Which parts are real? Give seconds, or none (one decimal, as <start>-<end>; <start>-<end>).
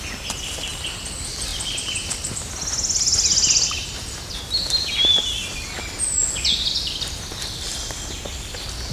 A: 0.0-8.9